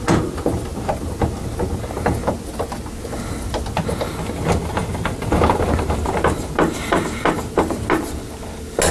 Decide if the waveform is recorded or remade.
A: recorded